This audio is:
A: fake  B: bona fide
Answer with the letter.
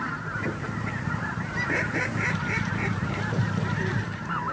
A